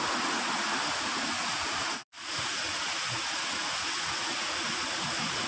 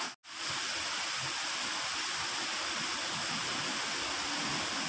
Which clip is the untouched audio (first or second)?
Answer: second